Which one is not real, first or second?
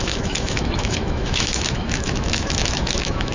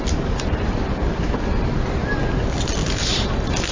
first